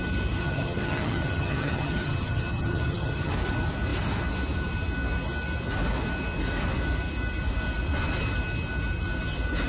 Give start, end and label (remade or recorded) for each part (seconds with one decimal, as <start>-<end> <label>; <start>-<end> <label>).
0.0-0.4 recorded; 0.4-3.3 remade; 3.3-9.7 recorded